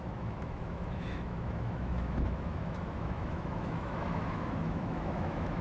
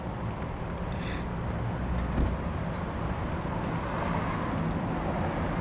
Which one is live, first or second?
second